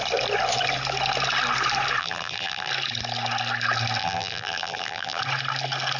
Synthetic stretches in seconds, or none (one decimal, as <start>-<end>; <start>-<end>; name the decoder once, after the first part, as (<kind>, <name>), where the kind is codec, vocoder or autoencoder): 2.0-2.7 (vocoder, BigVGAN v2); 4.0-5.2